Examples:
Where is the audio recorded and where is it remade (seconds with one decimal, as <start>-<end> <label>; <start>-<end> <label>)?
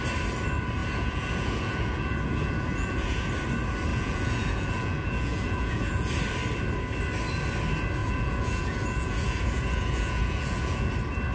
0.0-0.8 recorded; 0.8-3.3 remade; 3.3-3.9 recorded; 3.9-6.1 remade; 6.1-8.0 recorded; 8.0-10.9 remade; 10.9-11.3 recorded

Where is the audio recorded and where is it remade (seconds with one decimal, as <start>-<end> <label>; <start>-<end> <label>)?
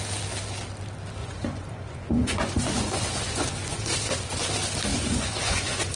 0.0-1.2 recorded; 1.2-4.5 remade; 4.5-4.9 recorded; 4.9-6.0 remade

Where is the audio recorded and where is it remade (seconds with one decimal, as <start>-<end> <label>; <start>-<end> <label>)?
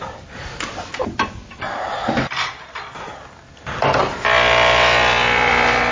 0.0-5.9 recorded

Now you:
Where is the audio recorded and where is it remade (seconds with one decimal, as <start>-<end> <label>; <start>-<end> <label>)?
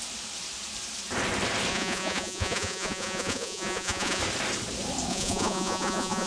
0.0-1.7 recorded; 1.7-4.2 remade; 4.2-5.1 recorded; 5.1-6.3 remade